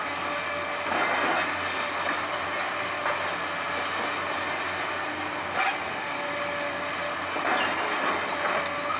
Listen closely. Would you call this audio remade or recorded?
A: recorded